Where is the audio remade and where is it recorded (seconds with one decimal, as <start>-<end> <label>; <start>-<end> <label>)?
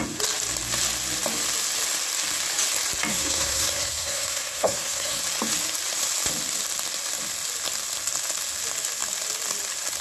0.0-3.1 recorded; 3.1-5.2 remade; 5.2-10.0 recorded